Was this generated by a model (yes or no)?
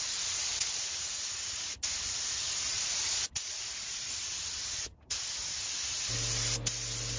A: no